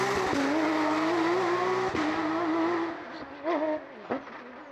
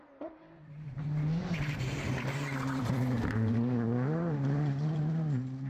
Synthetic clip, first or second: second